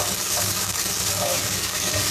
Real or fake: fake